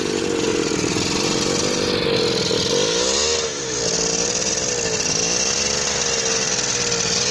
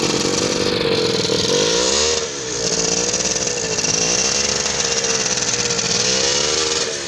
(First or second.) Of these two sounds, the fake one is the second